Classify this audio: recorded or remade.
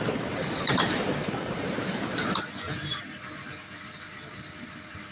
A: remade